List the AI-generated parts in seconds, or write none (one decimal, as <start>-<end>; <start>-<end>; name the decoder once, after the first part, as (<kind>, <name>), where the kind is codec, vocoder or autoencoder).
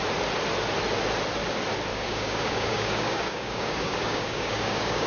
1.9-5.1 (codec, DAC)